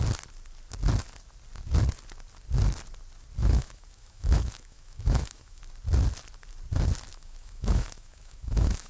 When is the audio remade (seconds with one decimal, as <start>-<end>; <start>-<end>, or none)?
3.4-5.6; 7.1-8.9